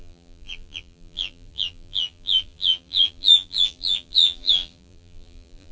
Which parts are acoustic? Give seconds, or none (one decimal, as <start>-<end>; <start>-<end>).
none